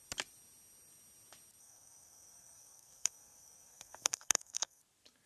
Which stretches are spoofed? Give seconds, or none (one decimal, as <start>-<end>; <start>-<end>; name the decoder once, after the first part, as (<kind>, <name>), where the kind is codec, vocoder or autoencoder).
1.6-4.8 (codec, SNAC)